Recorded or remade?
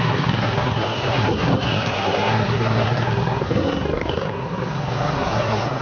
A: remade